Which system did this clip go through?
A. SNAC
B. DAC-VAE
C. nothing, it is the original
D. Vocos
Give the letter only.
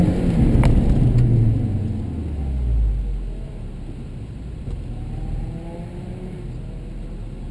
C